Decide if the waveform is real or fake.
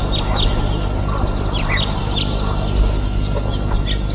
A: real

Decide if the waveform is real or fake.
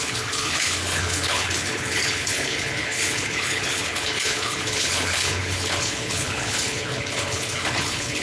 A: fake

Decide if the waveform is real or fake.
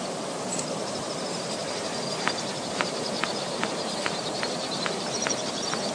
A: fake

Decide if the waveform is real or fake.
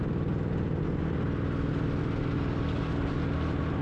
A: real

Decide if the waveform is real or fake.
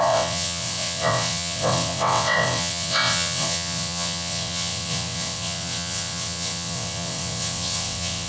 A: fake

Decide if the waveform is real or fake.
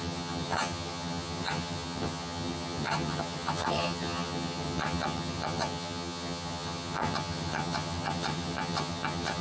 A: fake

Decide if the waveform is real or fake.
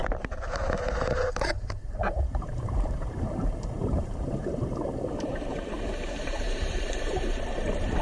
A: fake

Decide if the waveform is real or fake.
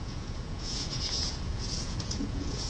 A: fake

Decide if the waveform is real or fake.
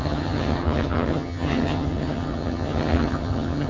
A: fake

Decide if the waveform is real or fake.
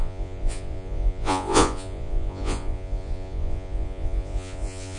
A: fake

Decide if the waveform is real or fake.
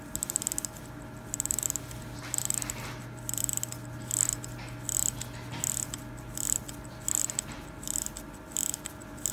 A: real